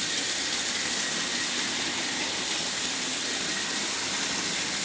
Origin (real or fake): real